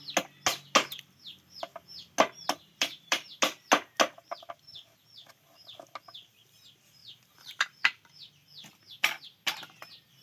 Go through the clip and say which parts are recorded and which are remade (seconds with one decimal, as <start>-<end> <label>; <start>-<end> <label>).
0.0-2.7 recorded; 2.7-3.3 remade; 3.3-7.0 recorded; 7.0-8.3 remade; 8.3-10.2 recorded